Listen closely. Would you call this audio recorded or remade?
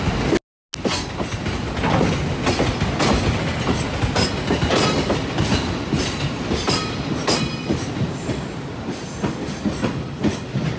recorded